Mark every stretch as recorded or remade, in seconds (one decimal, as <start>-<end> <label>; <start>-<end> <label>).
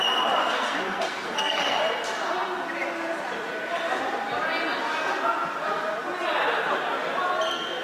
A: 0.0-0.4 recorded; 0.4-1.8 remade; 1.8-7.8 recorded